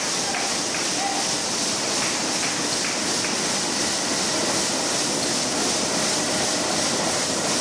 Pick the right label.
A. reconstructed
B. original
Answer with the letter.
B